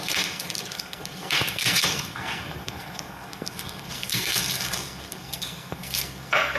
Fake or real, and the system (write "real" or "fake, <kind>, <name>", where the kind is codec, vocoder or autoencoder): fake, codec, SNAC